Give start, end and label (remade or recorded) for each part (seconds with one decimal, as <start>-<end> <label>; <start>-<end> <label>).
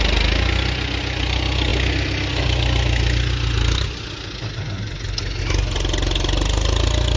0.0-7.2 recorded